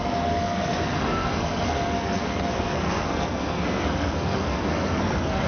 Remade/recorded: remade